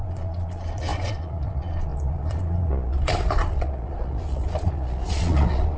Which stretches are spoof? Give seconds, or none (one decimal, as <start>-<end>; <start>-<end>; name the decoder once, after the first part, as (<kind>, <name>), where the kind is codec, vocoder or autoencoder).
0.0-5.8 (vocoder, Vocos)